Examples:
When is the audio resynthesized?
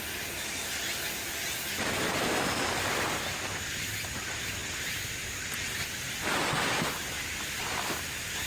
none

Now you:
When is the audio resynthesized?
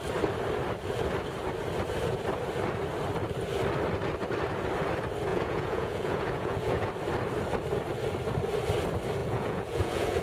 5.3-6.9 (vocoder, Vocos); 9.2-10.2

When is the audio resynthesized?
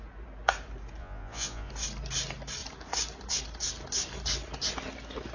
1.0-1.7 (vocoder, Vocos)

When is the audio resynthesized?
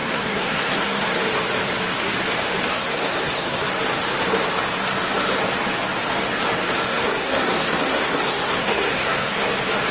0.0-1.2 (codec, SNAC); 2.7-3.7; 6.9-9.5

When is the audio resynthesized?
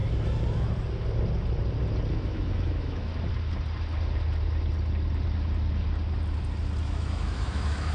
2.1-3.1 (autoencoder, DAC-VAE); 6.8-7.9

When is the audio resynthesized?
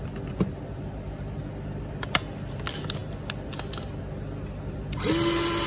none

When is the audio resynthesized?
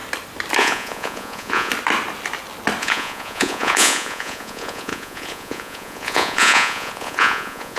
0.6-1.7 (vocoder, Vocos); 2.8-7.8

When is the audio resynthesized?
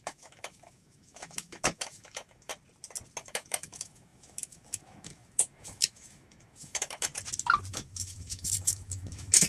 0.0-2.5 (autoencoder, DAC-VAE); 3.2-7.1; 7.7-9.5